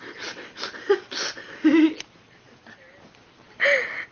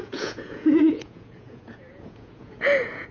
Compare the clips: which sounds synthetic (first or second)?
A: second